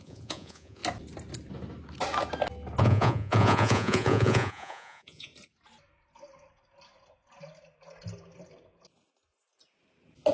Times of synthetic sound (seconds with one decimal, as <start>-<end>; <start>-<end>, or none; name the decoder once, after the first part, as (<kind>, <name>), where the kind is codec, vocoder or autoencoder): 0.0-0.8 (vocoder, Vocos); 2.8-5.3